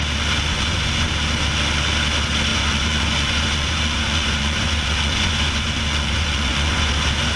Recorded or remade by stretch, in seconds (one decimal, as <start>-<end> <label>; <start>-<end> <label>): 0.0-0.5 recorded; 0.5-1.1 remade; 1.1-2.5 recorded; 2.5-6.9 remade; 6.9-7.4 recorded